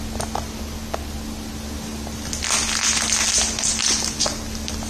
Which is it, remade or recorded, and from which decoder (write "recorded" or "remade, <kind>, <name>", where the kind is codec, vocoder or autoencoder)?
recorded